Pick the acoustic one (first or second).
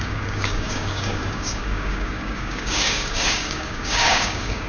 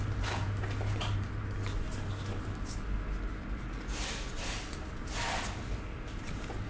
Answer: second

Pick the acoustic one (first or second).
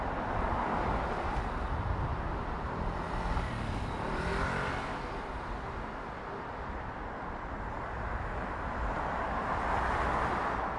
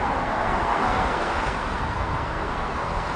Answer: first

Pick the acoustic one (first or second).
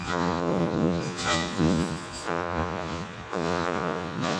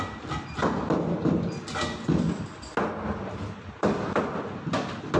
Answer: second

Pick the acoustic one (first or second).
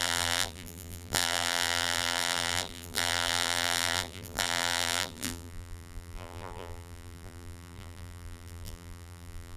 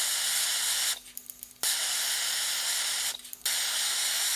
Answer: second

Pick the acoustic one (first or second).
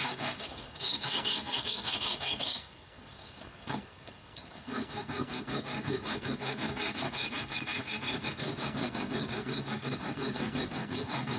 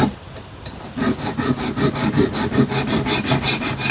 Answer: second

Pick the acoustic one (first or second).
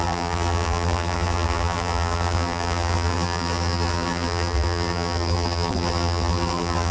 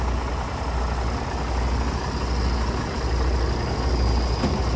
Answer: second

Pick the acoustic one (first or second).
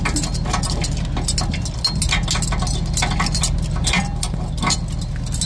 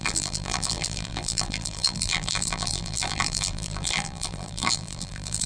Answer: first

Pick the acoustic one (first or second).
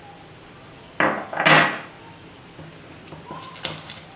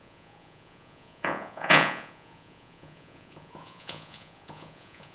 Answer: first